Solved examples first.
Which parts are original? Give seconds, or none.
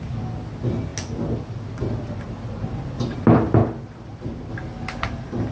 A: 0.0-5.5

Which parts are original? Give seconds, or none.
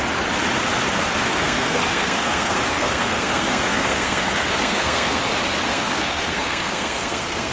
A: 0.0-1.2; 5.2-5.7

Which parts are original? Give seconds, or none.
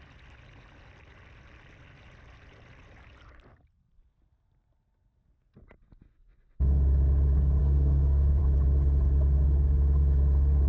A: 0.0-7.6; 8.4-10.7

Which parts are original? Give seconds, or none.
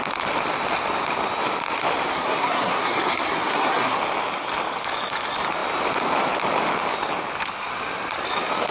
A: 0.0-2.1; 4.0-8.7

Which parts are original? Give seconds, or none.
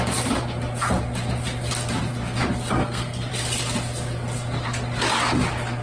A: 0.0-2.8; 3.3-5.8